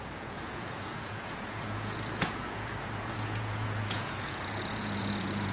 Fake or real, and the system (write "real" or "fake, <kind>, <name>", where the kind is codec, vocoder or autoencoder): fake, vocoder, Vocos